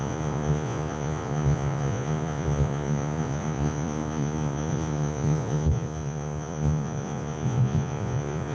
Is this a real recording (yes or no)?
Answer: no